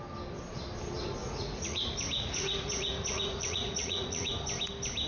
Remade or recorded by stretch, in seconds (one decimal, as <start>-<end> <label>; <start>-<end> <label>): 0.0-1.2 recorded; 1.2-4.3 remade; 4.3-5.1 recorded